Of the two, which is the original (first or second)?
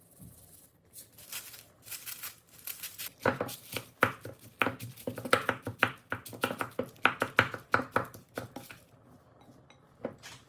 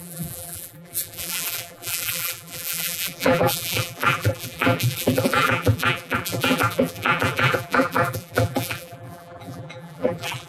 first